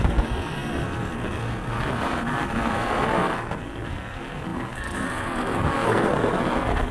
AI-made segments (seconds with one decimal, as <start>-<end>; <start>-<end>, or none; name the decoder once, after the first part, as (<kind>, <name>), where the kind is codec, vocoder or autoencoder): 0.0-6.9 (codec, SNAC)